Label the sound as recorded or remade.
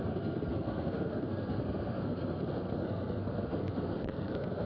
remade